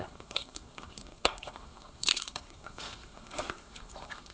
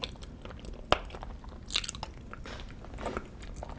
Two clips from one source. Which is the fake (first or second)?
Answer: first